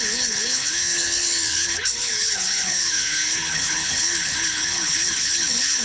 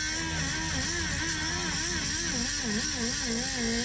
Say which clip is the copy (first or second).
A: first